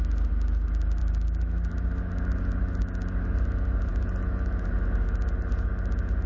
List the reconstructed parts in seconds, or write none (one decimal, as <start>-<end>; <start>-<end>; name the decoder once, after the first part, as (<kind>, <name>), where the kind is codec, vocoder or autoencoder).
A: 3.9-4.6 (autoencoder, DAC-VAE)